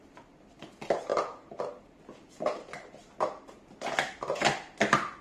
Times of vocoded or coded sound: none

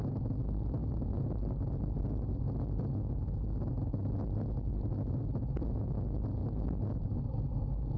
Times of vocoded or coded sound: none

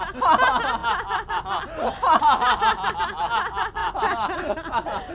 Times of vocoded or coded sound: none